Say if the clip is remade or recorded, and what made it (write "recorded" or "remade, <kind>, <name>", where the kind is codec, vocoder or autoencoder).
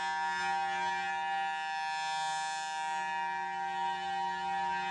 recorded